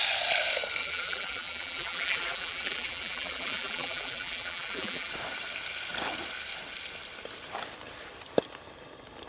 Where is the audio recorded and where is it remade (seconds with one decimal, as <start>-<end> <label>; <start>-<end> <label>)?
0.0-0.8 recorded; 0.8-5.1 remade; 5.1-9.3 recorded